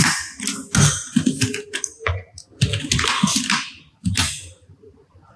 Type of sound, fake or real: real